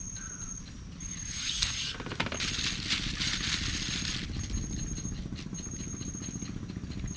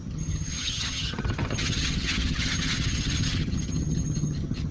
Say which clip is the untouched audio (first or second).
first